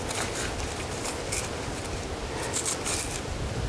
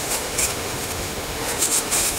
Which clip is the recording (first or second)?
first